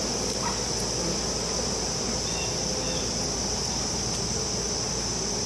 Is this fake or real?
real